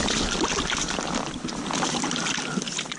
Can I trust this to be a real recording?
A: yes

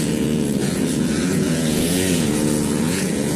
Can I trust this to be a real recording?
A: no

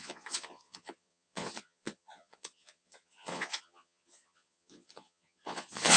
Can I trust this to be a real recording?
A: no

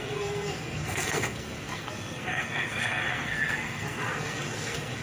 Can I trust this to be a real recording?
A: no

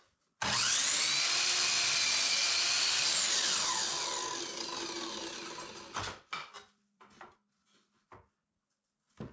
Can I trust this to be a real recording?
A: yes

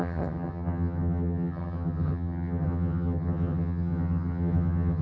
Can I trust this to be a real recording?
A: no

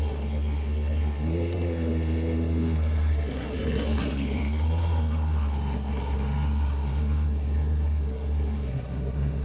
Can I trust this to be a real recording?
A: no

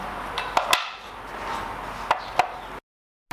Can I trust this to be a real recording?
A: yes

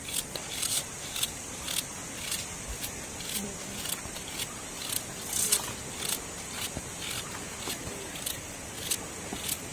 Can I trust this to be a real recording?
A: yes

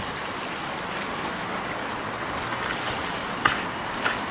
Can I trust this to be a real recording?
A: no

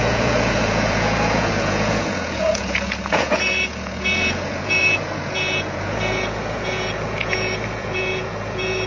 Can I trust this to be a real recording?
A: no